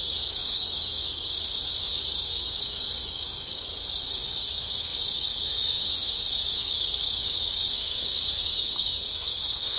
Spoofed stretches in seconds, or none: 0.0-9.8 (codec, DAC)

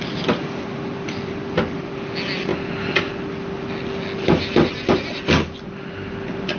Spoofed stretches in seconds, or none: none

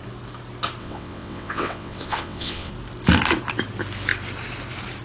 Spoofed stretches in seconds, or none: 0.8-2.7 (vocoder, WaveNeXt)

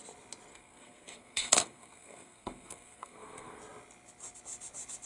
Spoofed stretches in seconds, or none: 0.5-3.6 (codec, SNAC)